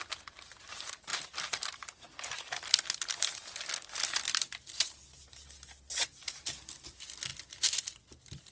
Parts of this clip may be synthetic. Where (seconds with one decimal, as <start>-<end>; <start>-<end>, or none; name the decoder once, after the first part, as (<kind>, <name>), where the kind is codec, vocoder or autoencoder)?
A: none

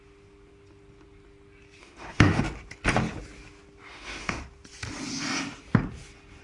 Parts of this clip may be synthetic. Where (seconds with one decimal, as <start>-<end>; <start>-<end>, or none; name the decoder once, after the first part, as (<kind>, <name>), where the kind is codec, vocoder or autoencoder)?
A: 1.8-2.4 (autoencoder, DAC-VAE); 3.9-4.4

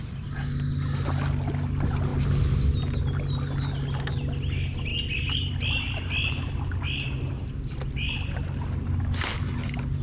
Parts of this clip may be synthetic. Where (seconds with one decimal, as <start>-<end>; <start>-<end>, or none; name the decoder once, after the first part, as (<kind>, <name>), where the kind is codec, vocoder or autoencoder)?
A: none

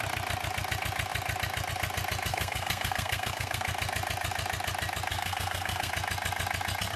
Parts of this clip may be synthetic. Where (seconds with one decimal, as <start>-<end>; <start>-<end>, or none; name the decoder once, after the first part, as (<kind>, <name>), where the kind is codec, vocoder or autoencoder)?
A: 2.3-3.7 (codec, SNAC); 5.1-5.9

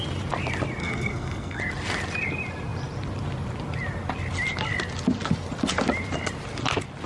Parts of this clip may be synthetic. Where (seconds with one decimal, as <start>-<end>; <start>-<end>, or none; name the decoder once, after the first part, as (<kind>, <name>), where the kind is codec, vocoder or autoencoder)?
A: 0.8-1.6 (codec, SNAC)

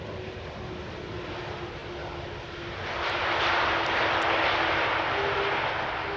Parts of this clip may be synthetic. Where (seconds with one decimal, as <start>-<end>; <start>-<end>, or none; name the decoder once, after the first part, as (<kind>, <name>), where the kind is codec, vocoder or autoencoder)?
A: none

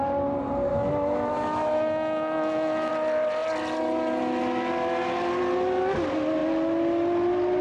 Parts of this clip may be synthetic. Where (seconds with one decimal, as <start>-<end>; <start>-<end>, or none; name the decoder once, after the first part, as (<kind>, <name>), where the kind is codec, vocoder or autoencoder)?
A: 0.7-2.9 (autoencoder, DAC-VAE)

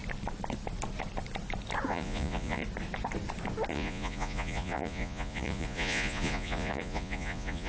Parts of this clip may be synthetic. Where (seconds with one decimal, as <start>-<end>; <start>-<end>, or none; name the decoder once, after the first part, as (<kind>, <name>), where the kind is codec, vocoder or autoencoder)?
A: 1.9-2.6 (vocoder, Vocos); 3.7-7.7